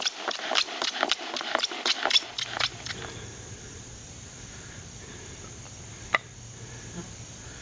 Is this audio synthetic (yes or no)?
yes